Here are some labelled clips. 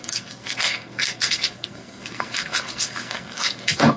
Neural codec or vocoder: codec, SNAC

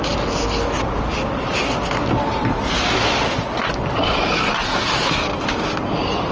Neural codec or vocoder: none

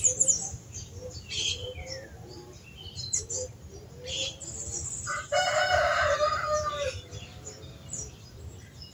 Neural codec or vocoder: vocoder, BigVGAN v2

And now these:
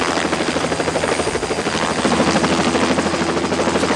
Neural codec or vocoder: none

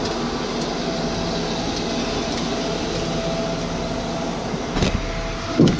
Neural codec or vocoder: none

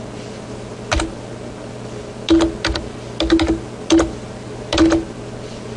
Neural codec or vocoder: none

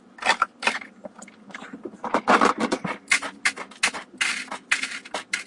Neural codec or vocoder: none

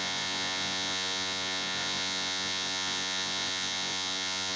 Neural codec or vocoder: vocoder, Vocos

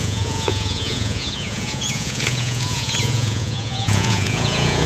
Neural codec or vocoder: vocoder, Vocos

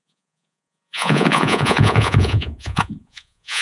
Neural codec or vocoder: vocoder, Vocos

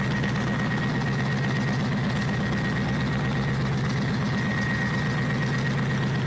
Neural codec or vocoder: none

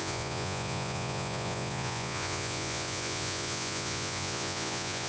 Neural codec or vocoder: vocoder, Vocos